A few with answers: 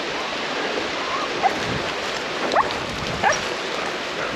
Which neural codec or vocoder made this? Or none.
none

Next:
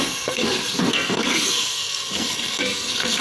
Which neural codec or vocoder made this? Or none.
codec, SNAC